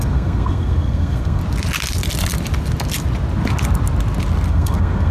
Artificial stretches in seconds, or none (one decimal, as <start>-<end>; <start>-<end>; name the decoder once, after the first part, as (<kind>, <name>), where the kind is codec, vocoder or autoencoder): 0.0-1.4 (codec, SNAC); 4.5-5.1